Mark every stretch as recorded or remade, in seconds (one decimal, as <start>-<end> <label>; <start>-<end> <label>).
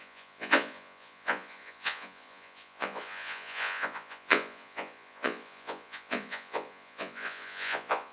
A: 0.0-8.1 remade